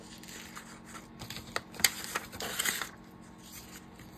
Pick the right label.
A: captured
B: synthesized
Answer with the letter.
A